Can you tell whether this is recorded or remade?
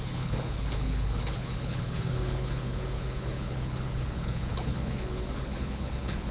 remade